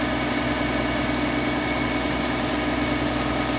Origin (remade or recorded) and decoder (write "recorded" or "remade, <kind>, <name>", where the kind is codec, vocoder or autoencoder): recorded